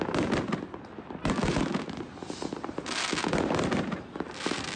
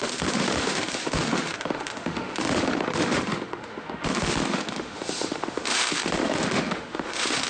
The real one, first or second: first